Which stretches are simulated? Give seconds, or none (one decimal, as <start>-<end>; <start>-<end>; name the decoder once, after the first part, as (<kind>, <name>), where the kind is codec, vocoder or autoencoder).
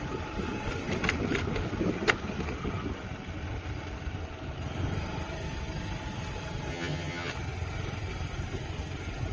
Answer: 6.7-7.3 (vocoder, HiFi-GAN)